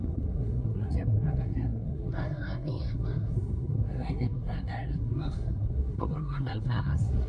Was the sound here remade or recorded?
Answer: remade